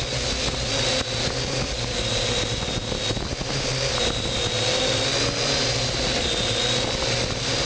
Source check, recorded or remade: recorded